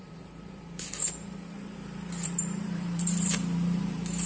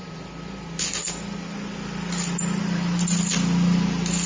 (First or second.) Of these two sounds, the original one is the second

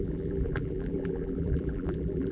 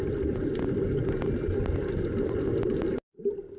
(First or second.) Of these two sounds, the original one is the second